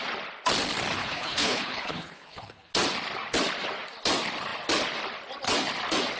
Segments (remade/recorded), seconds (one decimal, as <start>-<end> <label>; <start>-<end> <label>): 0.0-1.0 recorded; 1.0-2.7 remade; 2.7-6.2 recorded